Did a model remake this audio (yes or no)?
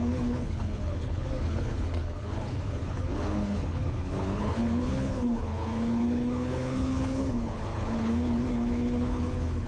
yes